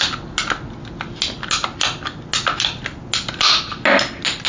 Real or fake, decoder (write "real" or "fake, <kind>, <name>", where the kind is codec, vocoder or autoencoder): real